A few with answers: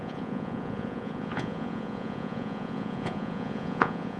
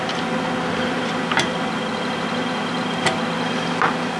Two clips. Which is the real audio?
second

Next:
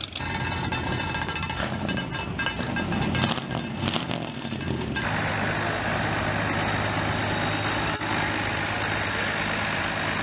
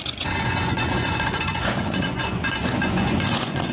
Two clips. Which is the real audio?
first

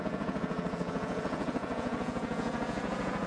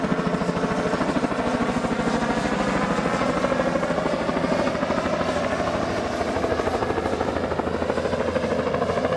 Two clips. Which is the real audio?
second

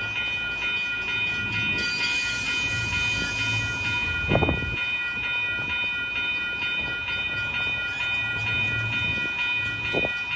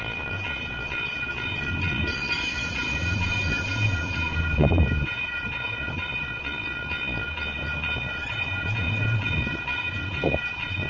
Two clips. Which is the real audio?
first